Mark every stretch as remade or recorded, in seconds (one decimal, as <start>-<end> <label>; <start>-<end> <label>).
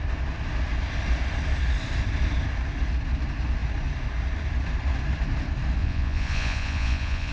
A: 0.0-5.8 recorded; 5.8-7.3 remade